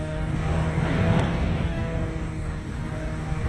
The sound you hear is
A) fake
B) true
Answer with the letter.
A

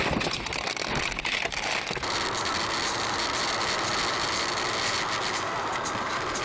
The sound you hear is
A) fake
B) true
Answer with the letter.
A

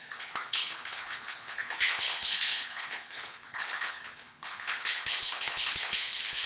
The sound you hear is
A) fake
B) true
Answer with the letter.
A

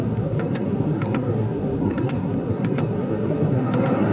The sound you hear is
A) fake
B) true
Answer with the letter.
A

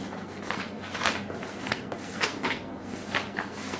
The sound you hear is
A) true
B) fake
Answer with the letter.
B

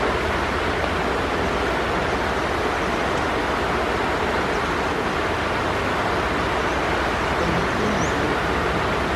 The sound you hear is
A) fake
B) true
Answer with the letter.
B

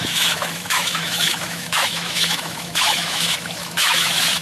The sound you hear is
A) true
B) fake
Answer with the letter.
B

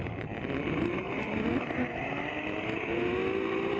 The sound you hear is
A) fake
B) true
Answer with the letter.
B